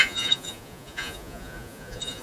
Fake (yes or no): yes